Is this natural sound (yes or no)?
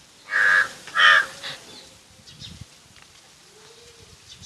yes